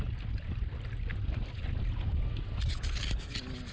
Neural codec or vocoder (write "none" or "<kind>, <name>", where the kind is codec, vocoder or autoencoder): none